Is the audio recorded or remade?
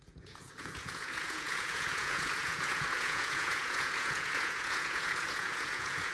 remade